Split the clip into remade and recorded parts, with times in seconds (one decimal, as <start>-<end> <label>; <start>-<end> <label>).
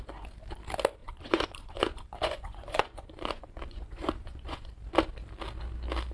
0.0-1.0 recorded; 1.0-4.7 remade; 4.7-6.1 recorded